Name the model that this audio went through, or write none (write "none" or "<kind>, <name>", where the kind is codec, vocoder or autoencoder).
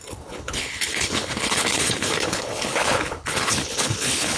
codec, HILCodec